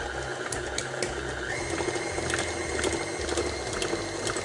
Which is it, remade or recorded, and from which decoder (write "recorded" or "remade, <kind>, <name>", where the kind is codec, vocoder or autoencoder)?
recorded